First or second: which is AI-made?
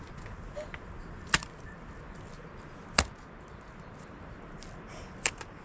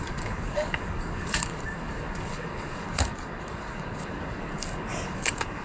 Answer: second